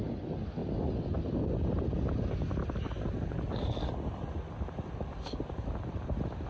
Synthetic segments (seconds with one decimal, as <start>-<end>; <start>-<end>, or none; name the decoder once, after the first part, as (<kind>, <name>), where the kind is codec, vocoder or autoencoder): none